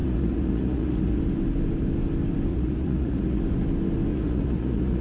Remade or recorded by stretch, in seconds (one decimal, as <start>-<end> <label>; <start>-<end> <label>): 0.0-1.2 remade; 1.2-2.5 recorded; 2.5-3.4 remade; 3.4-4.1 recorded; 4.1-5.0 remade